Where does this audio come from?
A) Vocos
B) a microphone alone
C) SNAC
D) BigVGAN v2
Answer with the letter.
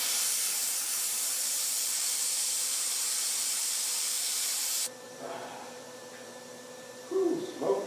D